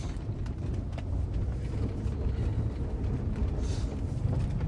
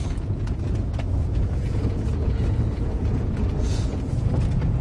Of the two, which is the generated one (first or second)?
second